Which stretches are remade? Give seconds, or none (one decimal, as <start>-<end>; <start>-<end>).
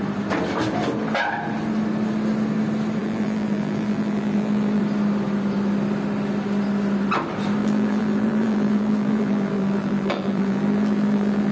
3.0-4.8; 7.6-11.5